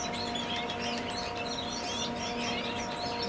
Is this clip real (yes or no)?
yes